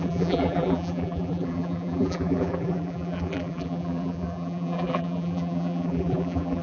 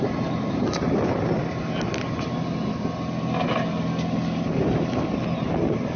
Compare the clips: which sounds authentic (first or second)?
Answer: second